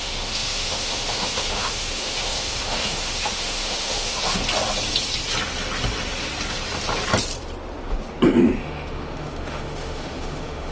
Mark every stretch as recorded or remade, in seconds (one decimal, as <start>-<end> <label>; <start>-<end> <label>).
0.0-4.4 remade; 4.4-8.6 recorded; 8.6-10.7 remade